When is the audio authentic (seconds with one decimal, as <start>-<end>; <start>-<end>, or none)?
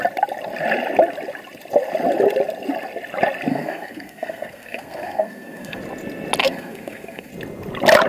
0.0-3.5; 5.8-6.4; 7.3-8.1